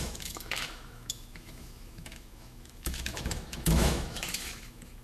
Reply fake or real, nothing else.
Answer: fake